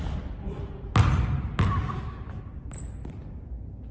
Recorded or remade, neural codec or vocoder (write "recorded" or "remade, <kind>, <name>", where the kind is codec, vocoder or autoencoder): recorded